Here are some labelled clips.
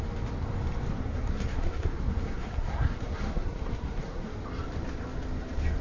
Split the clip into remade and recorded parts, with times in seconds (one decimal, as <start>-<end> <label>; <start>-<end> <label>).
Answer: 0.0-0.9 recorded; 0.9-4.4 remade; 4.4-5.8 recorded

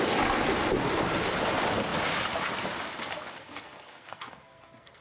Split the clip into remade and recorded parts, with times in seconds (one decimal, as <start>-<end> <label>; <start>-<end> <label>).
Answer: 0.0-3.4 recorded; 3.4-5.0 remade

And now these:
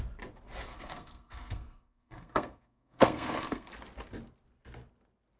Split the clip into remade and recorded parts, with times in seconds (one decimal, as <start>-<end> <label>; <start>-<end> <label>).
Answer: 0.0-0.7 recorded; 0.7-3.7 remade; 3.7-5.4 recorded

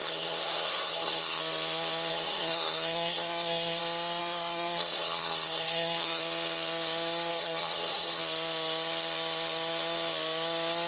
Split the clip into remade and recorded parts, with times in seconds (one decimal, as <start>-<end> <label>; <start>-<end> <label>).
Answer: 0.0-1.4 remade; 1.4-2.1 recorded; 2.1-3.8 remade; 3.8-4.2 recorded; 4.2-6.2 remade; 6.2-7.3 recorded; 7.3-8.2 remade; 8.2-10.9 recorded

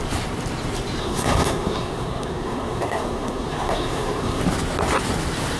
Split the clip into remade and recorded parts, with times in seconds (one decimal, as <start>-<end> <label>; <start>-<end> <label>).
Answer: 0.0-1.0 recorded; 1.0-4.4 remade; 4.4-5.6 recorded

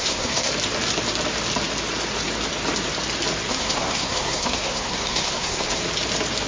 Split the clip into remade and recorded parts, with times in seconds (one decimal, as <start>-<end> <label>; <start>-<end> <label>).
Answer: 0.0-0.5 remade; 0.5-3.5 recorded; 3.5-5.8 remade; 5.8-6.5 recorded

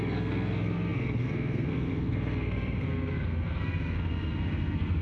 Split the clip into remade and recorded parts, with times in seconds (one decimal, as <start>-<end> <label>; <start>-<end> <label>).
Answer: 0.0-5.0 remade